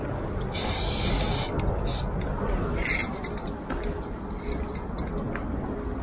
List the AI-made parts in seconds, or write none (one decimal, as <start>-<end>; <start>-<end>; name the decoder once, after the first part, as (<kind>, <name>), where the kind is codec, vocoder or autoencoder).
none